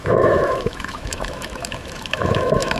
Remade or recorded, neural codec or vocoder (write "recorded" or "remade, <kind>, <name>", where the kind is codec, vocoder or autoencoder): remade, autoencoder, DAC-VAE